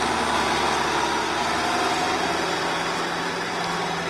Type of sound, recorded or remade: recorded